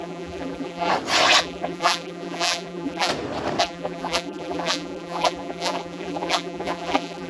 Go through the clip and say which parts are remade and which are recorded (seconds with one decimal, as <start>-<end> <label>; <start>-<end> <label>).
0.0-0.9 remade; 0.9-1.4 recorded; 1.4-3.1 remade; 3.1-3.6 recorded; 3.6-7.3 remade